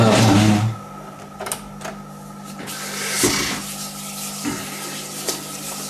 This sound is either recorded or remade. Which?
recorded